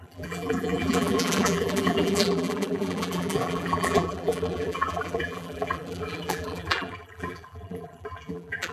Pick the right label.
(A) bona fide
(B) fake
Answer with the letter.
B